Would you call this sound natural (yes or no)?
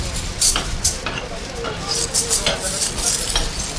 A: yes